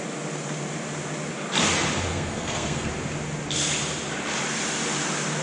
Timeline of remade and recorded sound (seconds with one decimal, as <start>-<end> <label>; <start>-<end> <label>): 0.0-2.1 recorded; 2.1-2.9 remade; 2.9-5.4 recorded